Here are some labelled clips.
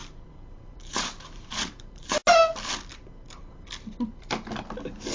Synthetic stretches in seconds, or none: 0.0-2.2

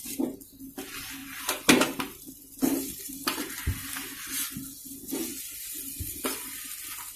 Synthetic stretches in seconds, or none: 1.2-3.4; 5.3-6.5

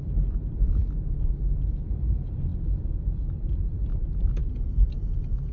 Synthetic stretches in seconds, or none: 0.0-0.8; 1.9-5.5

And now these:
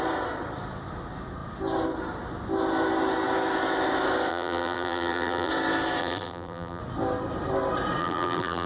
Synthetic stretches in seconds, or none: 4.3-5.5; 6.0-6.8; 8.0-8.7

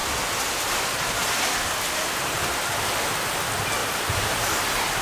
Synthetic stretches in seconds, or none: 3.8-4.4

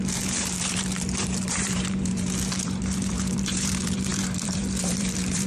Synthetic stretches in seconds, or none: 0.0-5.5